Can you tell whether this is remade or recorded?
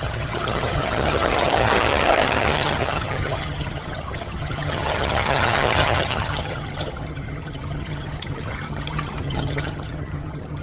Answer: remade